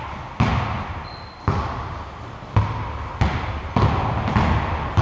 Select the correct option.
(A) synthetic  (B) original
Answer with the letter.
B